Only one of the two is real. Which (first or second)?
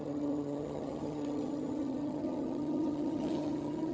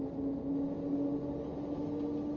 second